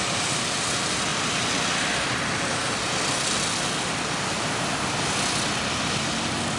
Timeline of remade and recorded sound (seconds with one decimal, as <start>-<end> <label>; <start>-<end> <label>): 0.0-6.6 recorded